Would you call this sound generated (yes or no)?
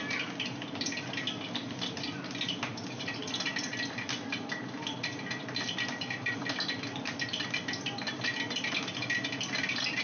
yes